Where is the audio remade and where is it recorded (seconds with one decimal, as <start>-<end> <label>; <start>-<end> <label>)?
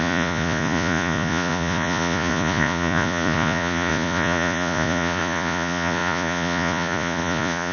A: 0.0-7.7 remade